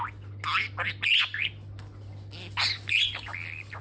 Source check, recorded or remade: recorded